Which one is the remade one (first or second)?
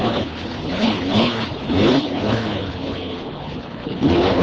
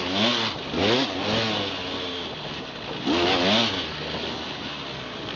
first